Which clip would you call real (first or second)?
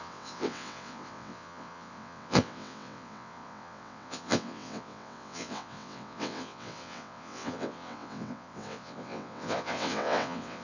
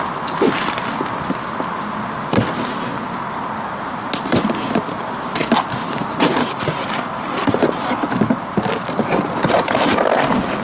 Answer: second